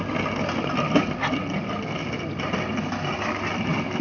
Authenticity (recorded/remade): recorded